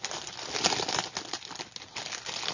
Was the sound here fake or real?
real